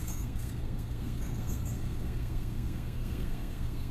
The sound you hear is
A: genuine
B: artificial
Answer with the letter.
B